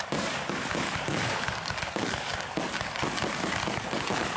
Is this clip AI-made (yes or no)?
yes